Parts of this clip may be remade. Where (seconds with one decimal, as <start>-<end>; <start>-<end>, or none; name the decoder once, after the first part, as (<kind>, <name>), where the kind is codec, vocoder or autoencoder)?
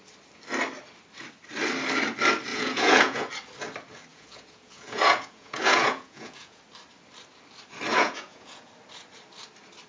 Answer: 2.5-3.3 (vocoder, Vocos); 4.1-6.6; 7.9-8.7